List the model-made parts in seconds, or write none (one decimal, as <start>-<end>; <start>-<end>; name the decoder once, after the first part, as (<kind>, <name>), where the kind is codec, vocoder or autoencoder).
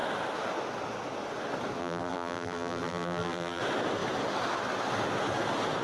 1.8-3.6 (vocoder, BigVGAN v2)